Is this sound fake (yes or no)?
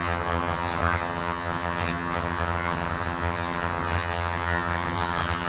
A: yes